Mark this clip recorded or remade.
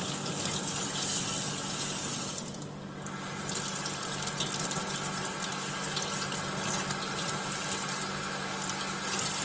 recorded